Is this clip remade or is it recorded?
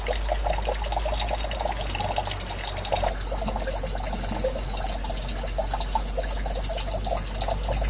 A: recorded